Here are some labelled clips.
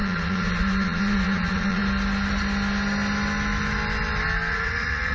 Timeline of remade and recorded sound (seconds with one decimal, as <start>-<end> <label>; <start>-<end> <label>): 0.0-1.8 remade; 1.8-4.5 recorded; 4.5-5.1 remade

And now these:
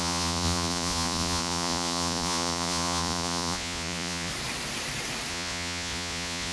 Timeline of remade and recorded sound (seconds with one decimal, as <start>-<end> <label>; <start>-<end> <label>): 0.0-4.3 remade; 4.3-5.3 recorded; 5.3-6.5 remade

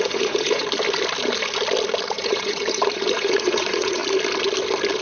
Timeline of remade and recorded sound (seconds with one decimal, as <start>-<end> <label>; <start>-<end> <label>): 0.0-0.6 remade; 0.6-2.1 recorded; 2.1-4.0 remade; 4.0-5.0 recorded

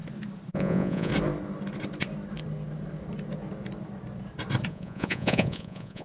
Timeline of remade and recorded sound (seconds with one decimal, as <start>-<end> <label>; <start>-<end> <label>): 0.0-0.5 recorded; 0.5-1.1 remade; 1.1-4.7 recorded; 4.7-6.0 remade